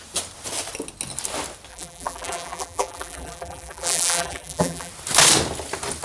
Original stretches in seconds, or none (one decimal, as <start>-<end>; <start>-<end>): 0.0-1.7; 4.9-6.0